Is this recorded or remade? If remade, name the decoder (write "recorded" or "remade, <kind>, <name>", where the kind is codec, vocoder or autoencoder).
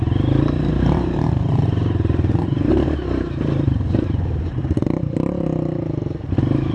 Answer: remade, vocoder, BigVGAN v2